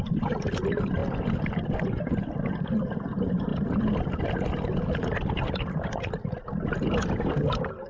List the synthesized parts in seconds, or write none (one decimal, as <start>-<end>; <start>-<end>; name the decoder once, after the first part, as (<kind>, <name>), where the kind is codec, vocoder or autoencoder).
1.0-2.0 (vocoder, BigVGAN v2); 3.5-4.2